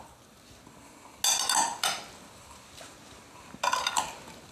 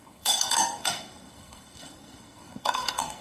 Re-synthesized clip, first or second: second